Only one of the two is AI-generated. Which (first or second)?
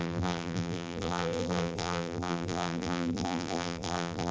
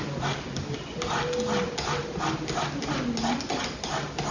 first